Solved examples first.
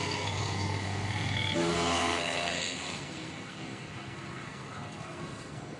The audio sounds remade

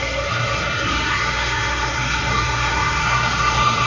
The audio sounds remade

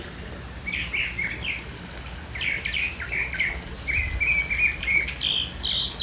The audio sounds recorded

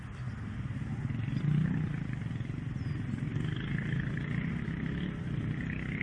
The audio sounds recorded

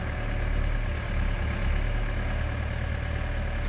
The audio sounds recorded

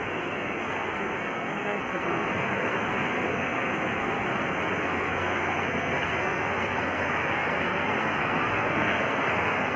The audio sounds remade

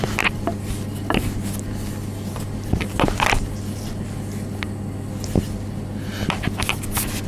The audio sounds recorded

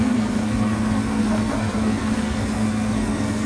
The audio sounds remade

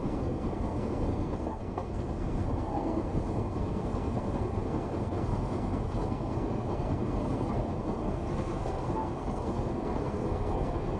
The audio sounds remade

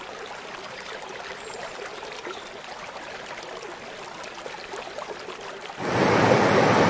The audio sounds recorded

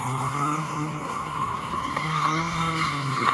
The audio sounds remade